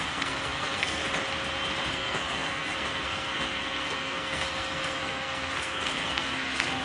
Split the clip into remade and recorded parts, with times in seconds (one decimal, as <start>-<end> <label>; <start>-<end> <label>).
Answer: 0.0-1.0 remade; 1.0-1.9 recorded; 1.9-6.8 remade